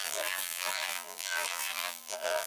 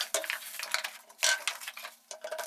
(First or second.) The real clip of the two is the second